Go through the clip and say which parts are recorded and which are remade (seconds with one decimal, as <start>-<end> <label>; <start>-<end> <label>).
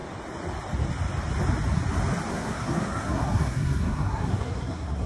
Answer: 0.0-2.3 recorded; 2.3-5.1 remade